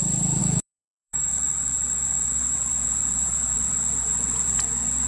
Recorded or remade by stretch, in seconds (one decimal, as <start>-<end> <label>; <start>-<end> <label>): 0.0-0.4 recorded; 0.4-1.3 remade; 1.3-5.1 recorded